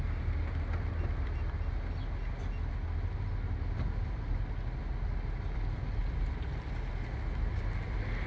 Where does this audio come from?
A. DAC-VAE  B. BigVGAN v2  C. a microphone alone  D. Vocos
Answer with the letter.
C